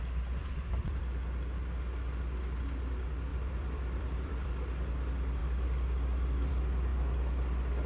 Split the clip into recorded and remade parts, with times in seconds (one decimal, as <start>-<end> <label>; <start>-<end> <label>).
0.0-0.4 recorded; 0.4-1.0 remade; 1.0-3.3 recorded; 3.3-4.5 remade; 4.5-7.9 recorded